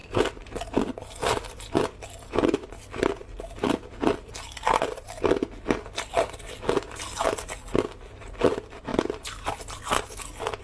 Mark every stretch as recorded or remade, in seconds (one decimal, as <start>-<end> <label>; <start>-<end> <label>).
0.0-10.6 recorded